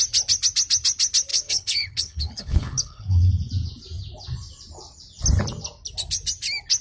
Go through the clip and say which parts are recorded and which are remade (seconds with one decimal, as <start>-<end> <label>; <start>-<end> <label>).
0.0-1.3 recorded; 1.3-3.3 remade; 3.3-6.8 recorded